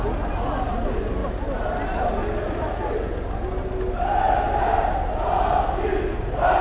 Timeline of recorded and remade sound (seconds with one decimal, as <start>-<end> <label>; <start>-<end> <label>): 0.0-6.6 recorded